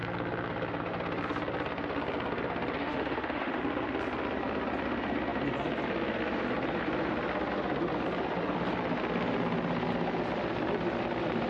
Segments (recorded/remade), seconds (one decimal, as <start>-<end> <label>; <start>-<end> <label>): 0.0-2.8 recorded; 2.8-3.6 remade; 3.6-11.5 recorded